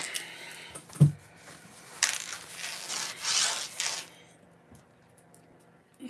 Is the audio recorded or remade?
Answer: recorded